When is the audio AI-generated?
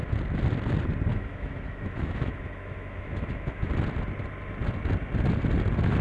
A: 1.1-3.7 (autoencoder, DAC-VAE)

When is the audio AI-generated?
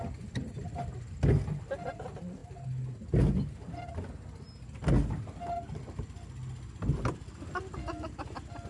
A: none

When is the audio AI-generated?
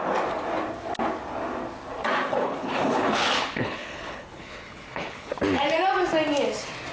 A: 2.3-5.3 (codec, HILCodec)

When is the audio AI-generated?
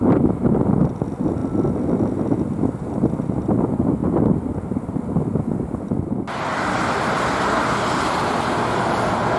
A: none